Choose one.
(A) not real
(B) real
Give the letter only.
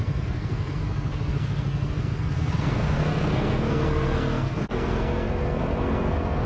A